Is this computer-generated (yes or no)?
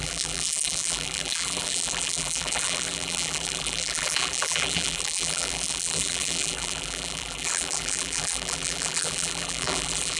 yes